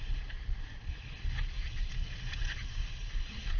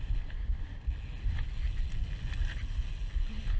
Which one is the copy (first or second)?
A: first